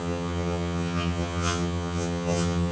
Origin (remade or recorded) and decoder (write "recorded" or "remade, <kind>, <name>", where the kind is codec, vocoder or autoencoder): remade, vocoder, HiFi-GAN